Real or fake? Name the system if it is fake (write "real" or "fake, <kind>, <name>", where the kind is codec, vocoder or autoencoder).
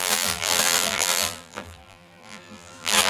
fake, vocoder, BigVGAN v2